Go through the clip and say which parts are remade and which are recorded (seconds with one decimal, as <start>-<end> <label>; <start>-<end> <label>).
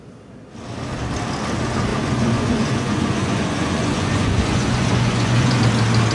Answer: 0.0-1.9 recorded; 1.9-5.6 remade; 5.6-6.1 recorded